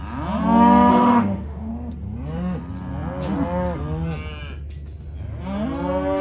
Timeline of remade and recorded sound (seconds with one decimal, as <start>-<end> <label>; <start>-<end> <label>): 0.0-0.9 recorded; 0.9-1.7 remade; 1.7-6.2 recorded